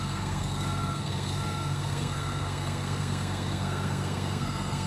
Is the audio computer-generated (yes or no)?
yes